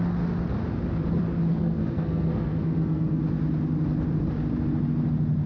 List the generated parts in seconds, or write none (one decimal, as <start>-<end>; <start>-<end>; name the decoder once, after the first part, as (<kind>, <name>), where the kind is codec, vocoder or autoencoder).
1.5-3.2 (codec, SNAC)